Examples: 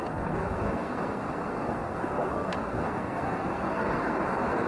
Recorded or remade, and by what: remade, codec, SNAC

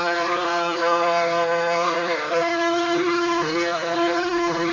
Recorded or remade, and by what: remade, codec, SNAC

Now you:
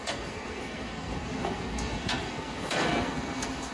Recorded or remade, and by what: remade, codec, SNAC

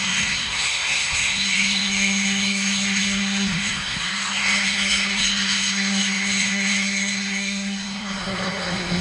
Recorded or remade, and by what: remade, codec, SNAC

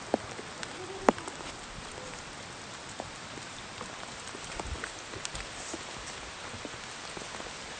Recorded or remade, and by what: recorded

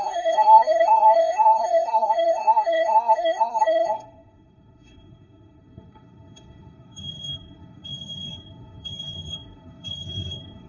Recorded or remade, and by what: remade, codec, SNAC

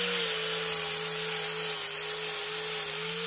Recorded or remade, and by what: recorded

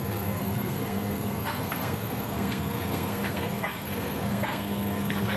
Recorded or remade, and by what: remade, codec, SNAC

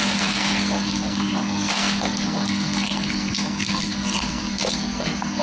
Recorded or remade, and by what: remade, codec, SNAC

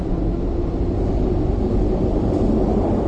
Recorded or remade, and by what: recorded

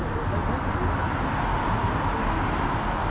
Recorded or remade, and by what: recorded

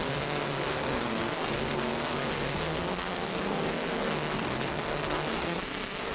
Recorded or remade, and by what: remade, codec, SNAC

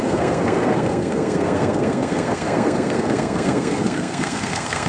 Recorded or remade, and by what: remade, codec, SNAC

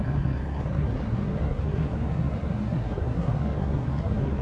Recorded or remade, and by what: remade, codec, SNAC